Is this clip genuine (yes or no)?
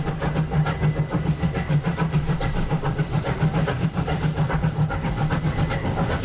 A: yes